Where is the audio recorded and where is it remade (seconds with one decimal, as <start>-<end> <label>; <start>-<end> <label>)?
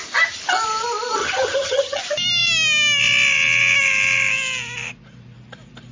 0.0-1.2 recorded; 1.2-2.0 remade; 2.0-5.9 recorded